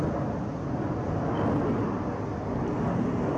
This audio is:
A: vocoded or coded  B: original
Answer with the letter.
B